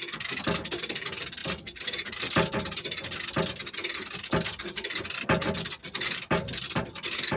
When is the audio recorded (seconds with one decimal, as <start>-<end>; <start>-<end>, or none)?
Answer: 0.0-7.4